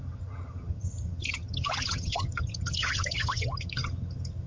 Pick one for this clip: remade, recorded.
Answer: remade